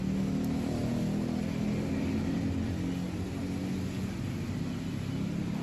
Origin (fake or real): real